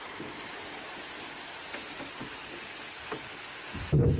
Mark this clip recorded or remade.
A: recorded